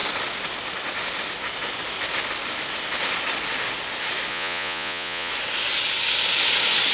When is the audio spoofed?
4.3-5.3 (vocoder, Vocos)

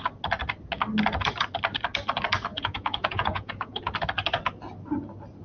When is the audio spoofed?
2.5-3.8 (vocoder, Vocos)

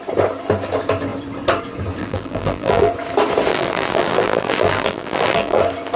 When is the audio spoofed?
2.0-2.9 (vocoder, BigVGAN v2); 3.5-5.6

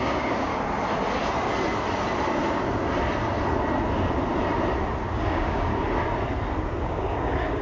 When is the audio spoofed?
0.0-0.5 (codec, DAC); 5.1-5.7; 6.8-7.6

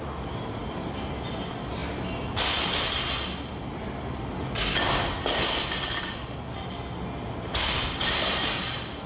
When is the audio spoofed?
none

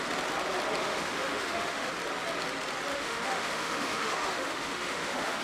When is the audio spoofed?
0.8-1.9 (autoencoder, DAC-VAE); 2.9-5.4